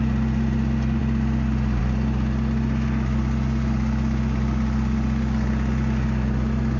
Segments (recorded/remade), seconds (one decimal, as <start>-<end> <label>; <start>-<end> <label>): 0.0-6.8 recorded